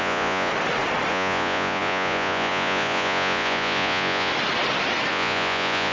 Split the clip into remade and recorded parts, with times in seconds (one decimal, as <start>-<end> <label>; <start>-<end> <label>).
0.0-0.5 remade; 0.5-1.1 recorded; 1.1-4.3 remade; 4.3-5.1 recorded; 5.1-5.9 remade